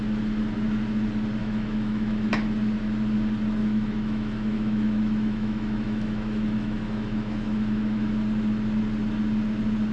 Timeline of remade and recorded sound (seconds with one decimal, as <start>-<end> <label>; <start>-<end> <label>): 0.0-1.4 recorded; 1.4-2.3 remade; 2.3-3.6 recorded; 3.6-8.1 remade; 8.1-9.9 recorded